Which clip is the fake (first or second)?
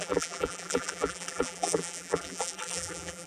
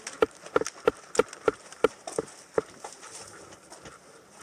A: first